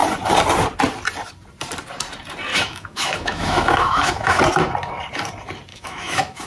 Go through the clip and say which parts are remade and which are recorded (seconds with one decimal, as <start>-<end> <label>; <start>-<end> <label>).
0.0-2.5 recorded; 2.5-4.4 remade; 4.4-5.7 recorded; 5.7-6.5 remade